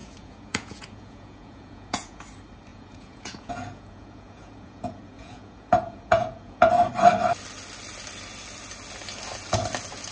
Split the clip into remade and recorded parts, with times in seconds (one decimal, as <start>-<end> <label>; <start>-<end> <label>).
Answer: 0.0-2.2 remade; 2.2-2.7 recorded; 2.7-6.7 remade; 6.7-10.1 recorded